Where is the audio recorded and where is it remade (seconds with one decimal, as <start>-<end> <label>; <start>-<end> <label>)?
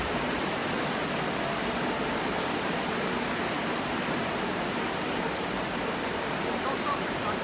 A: 0.0-0.6 remade; 0.6-2.2 recorded; 2.2-7.4 remade